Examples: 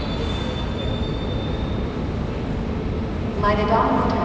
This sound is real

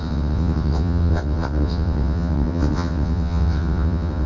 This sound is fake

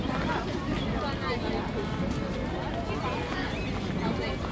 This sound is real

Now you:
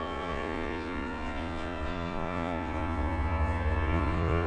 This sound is fake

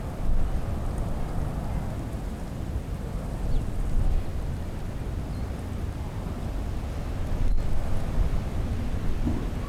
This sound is real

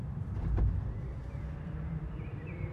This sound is fake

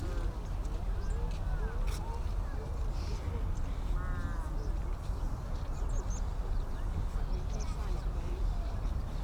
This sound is real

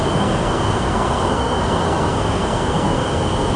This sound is fake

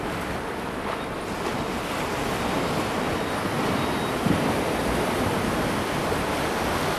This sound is real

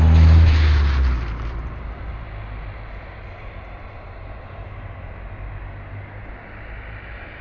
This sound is real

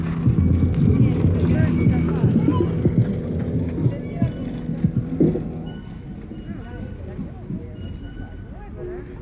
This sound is real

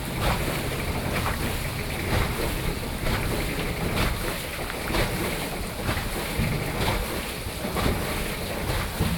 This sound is real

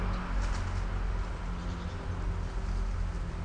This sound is real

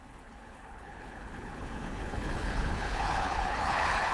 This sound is fake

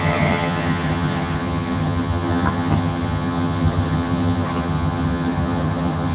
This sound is fake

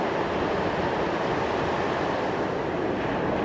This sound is real